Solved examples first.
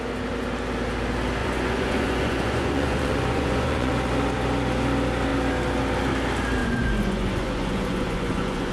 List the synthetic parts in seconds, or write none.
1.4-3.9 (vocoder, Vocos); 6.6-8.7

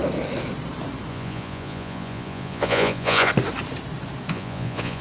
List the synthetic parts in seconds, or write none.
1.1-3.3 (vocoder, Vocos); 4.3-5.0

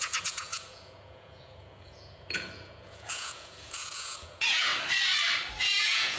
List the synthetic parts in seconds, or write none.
0.0-4.7 (vocoder, Vocos); 5.6-6.2

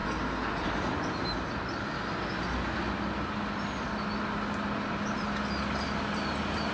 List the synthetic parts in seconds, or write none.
none

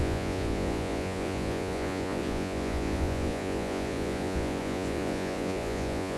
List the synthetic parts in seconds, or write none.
0.0-6.2 (vocoder, Vocos)